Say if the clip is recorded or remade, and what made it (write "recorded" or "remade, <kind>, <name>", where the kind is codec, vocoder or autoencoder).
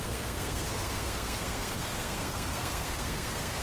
remade, codec, SNAC